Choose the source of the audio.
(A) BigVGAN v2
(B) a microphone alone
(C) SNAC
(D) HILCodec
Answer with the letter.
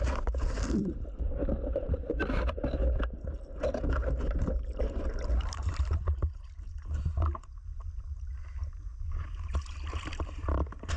A